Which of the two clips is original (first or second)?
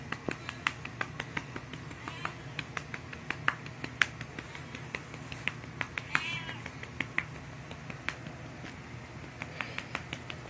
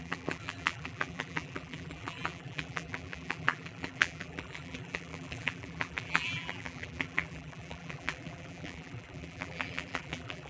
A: first